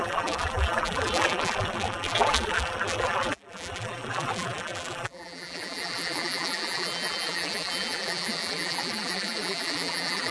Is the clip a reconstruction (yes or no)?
yes